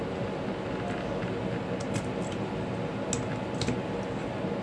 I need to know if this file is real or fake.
real